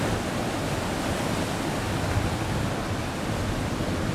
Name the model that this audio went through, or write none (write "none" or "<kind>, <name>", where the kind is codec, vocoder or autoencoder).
none